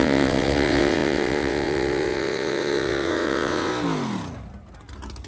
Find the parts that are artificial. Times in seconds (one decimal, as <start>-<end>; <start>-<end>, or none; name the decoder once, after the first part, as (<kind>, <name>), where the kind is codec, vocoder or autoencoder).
0.0-3.7 (vocoder, WaveNeXt)